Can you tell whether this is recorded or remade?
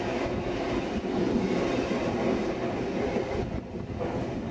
recorded